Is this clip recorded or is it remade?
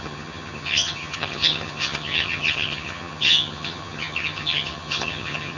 remade